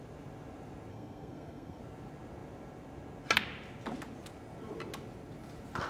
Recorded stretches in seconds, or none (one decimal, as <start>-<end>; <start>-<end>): 0.0-0.9; 1.8-5.9